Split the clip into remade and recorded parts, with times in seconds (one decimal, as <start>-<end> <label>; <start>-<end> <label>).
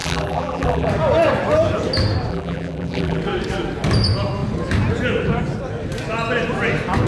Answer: 0.0-0.9 remade; 0.9-2.3 recorded; 2.3-3.2 remade; 3.2-7.1 recorded